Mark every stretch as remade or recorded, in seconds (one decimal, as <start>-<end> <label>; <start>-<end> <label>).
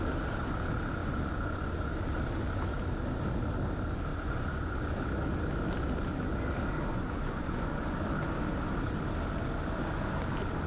0.0-1.0 recorded; 1.0-1.9 remade; 1.9-4.1 recorded; 4.1-4.7 remade; 4.7-6.9 recorded; 6.9-8.0 remade; 8.0-10.7 recorded